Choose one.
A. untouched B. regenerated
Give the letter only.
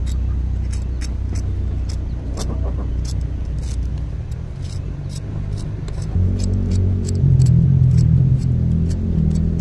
A